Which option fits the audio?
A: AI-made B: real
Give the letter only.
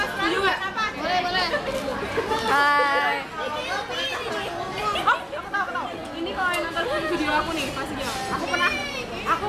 B